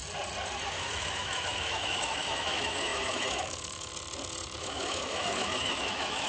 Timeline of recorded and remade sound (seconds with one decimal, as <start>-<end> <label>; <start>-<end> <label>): 0.0-0.7 recorded; 0.7-3.9 remade; 3.9-4.6 recorded; 4.6-6.3 remade